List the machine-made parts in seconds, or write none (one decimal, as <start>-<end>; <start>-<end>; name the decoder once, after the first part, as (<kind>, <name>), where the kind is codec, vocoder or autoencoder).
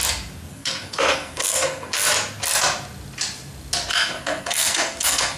0.5-2.0 (codec, SNAC); 3.9-5.4